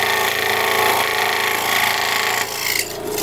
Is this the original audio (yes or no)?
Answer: yes